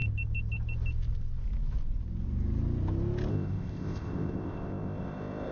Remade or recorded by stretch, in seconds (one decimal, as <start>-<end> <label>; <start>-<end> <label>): 0.0-3.3 recorded; 3.3-5.5 remade